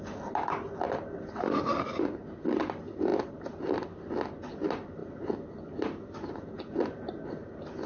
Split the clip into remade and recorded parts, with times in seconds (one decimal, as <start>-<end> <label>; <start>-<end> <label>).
0.0-7.9 recorded